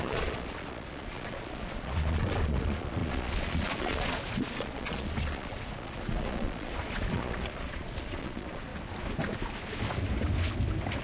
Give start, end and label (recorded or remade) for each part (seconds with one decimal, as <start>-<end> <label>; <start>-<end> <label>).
0.0-8.7 remade; 8.7-11.0 recorded